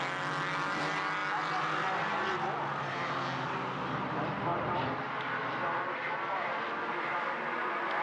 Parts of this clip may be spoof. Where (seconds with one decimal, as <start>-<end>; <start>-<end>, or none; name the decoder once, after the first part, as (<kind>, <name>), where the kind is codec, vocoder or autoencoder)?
none